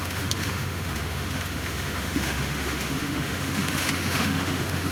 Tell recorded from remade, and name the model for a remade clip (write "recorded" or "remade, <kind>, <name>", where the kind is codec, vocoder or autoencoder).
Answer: remade, autoencoder, DAC-VAE